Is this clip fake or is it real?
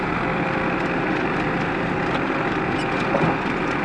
real